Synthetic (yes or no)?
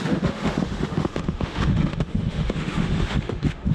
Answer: yes